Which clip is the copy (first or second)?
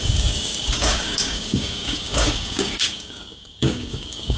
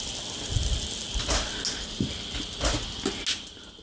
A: first